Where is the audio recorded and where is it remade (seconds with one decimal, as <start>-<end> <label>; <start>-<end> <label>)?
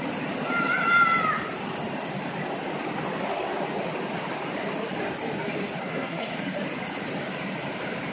0.0-5.8 recorded; 5.8-6.3 remade; 6.3-8.1 recorded